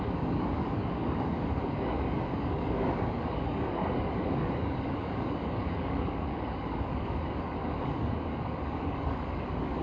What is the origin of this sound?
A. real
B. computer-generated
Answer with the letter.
B